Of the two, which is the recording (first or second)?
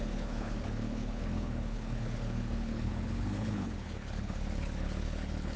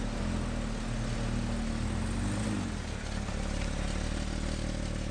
second